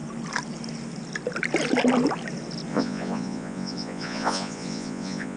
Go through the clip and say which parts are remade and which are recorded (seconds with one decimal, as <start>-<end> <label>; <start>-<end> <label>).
0.0-2.7 recorded; 2.7-5.4 remade